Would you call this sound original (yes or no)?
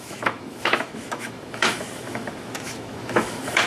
no